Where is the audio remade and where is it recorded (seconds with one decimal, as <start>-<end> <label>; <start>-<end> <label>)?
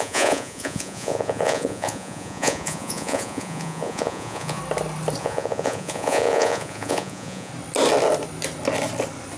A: 0.0-4.6 remade; 4.6-5.2 recorded; 5.2-7.5 remade; 7.5-9.4 recorded